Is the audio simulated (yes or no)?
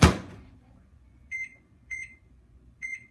yes